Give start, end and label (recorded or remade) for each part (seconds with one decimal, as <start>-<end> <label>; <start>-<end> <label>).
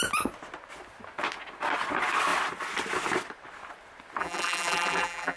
0.0-4.2 recorded; 4.2-5.4 remade